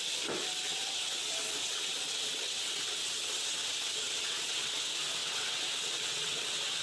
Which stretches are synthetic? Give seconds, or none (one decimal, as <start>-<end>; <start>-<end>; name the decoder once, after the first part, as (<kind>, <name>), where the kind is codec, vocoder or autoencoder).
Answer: 0.7-4.8 (vocoder, WaveNeXt); 5.2-6.8